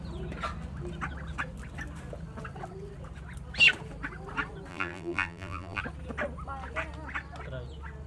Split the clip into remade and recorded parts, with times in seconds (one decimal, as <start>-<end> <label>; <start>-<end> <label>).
0.0-4.7 recorded; 4.7-5.8 remade; 5.8-8.1 recorded